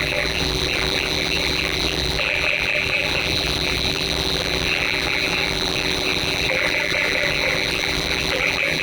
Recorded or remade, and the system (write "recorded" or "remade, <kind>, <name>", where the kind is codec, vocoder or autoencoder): remade, vocoder, BigVGAN v2